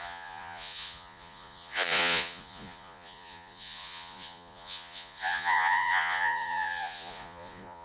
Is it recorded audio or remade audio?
remade